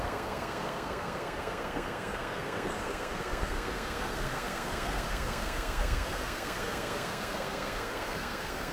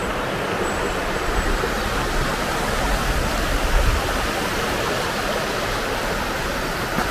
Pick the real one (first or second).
second